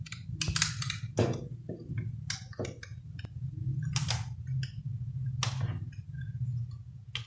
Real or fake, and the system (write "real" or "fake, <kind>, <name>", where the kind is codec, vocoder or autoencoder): real